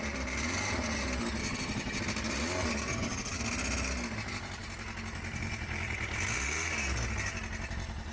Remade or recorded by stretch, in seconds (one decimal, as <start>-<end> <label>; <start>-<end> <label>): 0.0-1.4 recorded; 1.4-2.0 remade; 2.0-2.9 recorded; 2.9-3.4 remade; 3.4-8.1 recorded